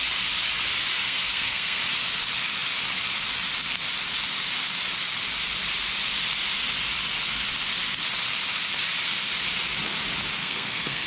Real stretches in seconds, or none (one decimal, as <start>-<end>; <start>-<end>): 0.0-1.0; 1.8-10.4